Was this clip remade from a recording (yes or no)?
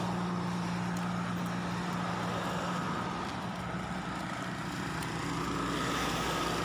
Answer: no